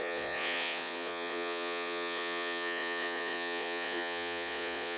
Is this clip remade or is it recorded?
remade